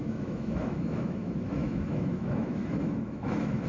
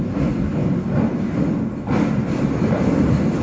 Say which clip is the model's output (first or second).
first